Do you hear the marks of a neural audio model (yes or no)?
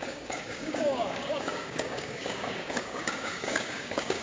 yes